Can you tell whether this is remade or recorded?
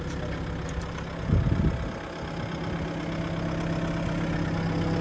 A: recorded